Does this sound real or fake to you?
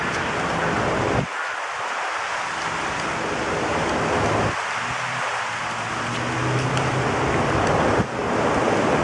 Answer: real